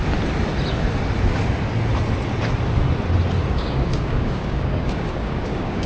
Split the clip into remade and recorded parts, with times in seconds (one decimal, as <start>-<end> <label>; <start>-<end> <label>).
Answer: 0.0-3.5 recorded; 3.5-5.9 remade